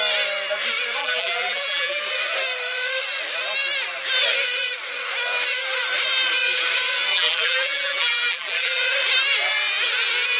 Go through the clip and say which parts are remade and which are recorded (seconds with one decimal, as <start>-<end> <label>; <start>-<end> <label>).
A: 0.0-1.0 recorded; 1.0-2.0 remade; 2.0-7.1 recorded; 7.1-8.8 remade; 8.8-10.4 recorded